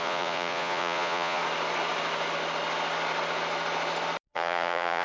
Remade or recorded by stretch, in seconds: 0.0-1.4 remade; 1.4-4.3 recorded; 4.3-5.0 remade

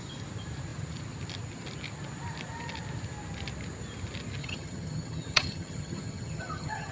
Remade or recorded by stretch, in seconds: 0.0-4.4 recorded; 4.4-6.9 remade

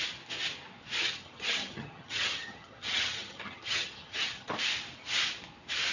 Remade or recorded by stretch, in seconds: 0.0-1.0 recorded; 1.0-4.5 remade; 4.5-5.9 recorded

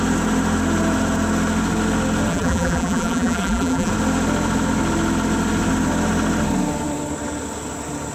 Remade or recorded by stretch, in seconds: 0.0-2.3 recorded; 2.3-3.9 remade; 3.9-8.1 recorded